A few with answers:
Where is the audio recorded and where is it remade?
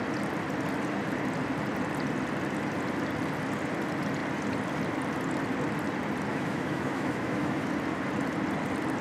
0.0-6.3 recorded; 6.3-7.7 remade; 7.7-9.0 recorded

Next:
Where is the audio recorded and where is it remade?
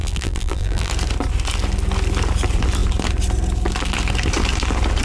0.0-0.9 remade; 0.9-5.0 recorded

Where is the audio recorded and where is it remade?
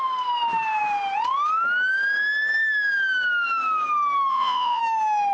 0.0-4.3 recorded; 4.3-4.8 remade; 4.8-5.3 recorded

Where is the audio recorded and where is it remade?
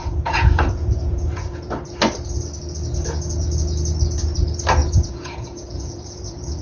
0.0-1.7 remade; 1.7-4.8 recorded; 4.8-6.6 remade